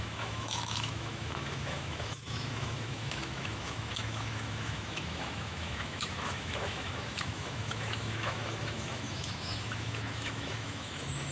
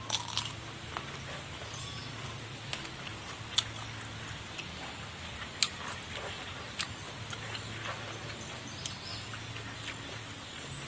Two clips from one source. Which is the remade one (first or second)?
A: first